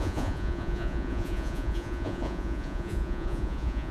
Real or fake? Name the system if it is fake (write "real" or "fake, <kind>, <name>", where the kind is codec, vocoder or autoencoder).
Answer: fake, vocoder, Vocos